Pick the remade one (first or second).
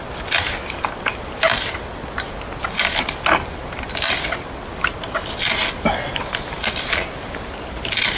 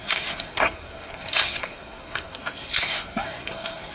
second